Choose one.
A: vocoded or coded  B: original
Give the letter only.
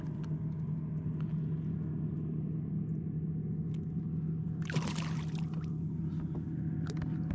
B